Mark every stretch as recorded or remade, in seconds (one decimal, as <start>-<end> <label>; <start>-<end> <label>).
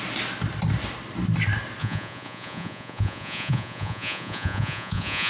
0.0-1.8 recorded; 1.8-5.3 remade